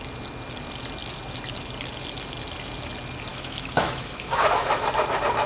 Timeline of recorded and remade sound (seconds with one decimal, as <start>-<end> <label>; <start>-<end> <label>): 0.0-3.3 recorded; 3.3-4.8 remade; 4.8-5.5 recorded